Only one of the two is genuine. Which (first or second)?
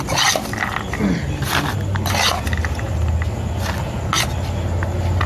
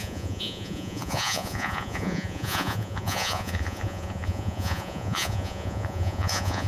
first